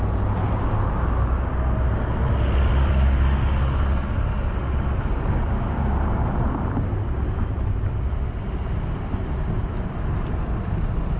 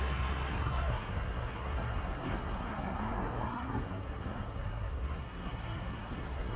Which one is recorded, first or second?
first